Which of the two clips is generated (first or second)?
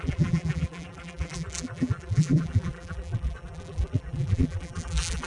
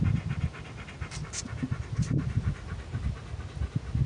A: first